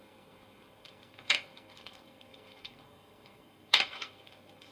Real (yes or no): no